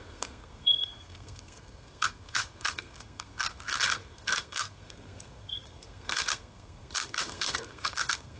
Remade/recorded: remade